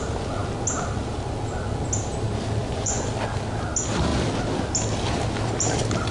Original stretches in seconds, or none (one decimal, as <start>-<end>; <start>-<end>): 0.0-2.6; 3.1-6.1